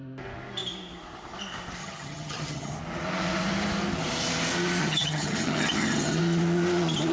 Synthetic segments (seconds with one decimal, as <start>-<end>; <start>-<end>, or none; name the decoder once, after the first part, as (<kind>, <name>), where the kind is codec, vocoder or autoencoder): 1.8-2.7 (vocoder, HiFi-GAN); 4.8-6.2